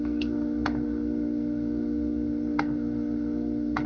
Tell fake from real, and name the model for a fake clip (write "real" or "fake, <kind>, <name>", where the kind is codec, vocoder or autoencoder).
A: fake, codec, SNAC